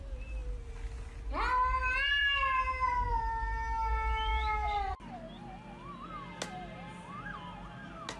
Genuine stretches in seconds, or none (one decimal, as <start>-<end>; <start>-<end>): 0.0-2.2; 3.1-8.2